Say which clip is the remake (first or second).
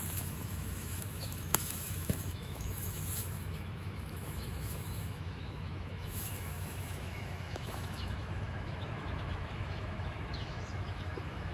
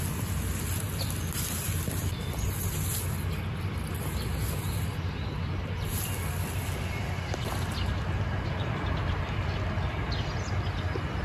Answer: first